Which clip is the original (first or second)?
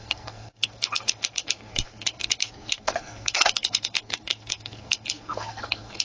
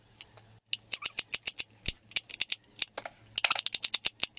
second